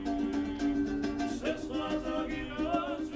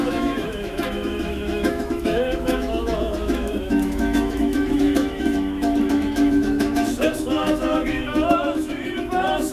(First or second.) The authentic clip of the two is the first